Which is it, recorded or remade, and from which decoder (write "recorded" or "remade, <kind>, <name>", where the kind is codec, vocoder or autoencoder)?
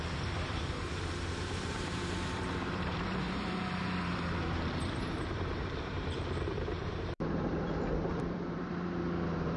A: remade, vocoder, BigVGAN v2